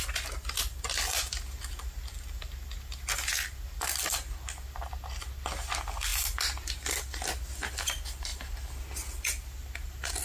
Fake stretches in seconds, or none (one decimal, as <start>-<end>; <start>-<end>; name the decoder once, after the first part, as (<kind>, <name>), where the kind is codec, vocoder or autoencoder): none